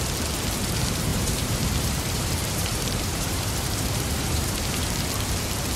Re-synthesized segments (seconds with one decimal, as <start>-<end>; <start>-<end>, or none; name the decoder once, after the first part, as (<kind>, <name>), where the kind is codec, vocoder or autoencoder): 1.1-4.6 (vocoder, BigVGAN v2)